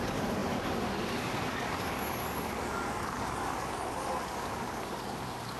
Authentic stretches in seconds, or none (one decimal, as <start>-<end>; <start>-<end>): none